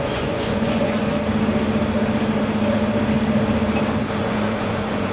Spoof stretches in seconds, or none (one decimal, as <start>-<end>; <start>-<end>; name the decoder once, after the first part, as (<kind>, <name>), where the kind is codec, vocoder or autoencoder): 0.0-1.1 (vocoder, Vocos); 4.2-5.1